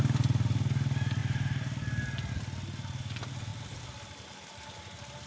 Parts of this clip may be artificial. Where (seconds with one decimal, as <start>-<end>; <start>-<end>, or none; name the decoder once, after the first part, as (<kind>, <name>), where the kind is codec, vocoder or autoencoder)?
3.5-5.3 (vocoder, BigVGAN v2)